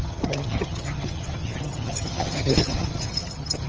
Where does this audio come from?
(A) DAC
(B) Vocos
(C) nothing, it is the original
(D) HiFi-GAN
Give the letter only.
D